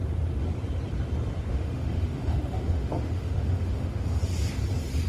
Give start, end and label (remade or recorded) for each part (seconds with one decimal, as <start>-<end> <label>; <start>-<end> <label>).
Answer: 0.0-1.5 recorded; 1.5-4.2 remade; 4.2-5.1 recorded